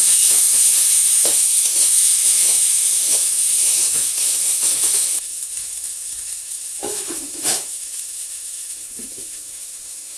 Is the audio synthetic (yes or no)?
yes